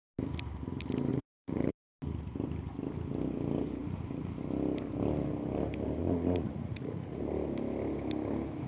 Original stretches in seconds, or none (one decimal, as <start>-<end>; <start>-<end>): 0.0-1.1; 1.7-6.0; 7.2-8.7